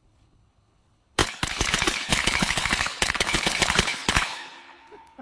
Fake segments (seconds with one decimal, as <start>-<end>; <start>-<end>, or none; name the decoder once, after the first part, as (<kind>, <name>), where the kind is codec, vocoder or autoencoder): 0.0-5.2 (codec, HILCodec)